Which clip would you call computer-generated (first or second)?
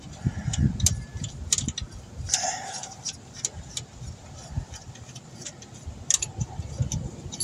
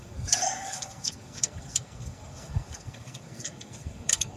second